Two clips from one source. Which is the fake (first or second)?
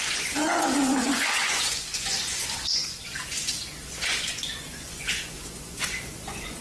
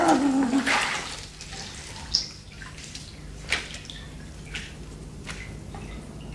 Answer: first